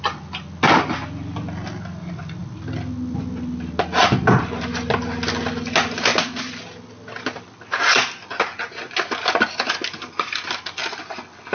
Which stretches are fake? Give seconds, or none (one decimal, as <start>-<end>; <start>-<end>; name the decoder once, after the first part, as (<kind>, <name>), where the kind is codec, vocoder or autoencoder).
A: none